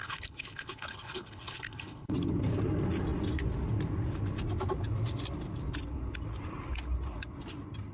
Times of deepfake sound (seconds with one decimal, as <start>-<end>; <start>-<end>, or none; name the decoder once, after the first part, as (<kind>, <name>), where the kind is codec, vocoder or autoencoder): 0.0-2.1 (codec, HILCodec)